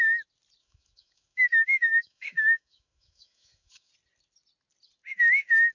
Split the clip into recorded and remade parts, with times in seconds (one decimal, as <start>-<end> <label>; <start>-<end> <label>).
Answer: 0.0-0.6 recorded; 0.6-3.9 remade; 3.9-5.7 recorded